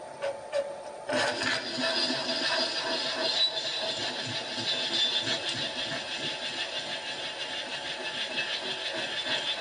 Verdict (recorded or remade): recorded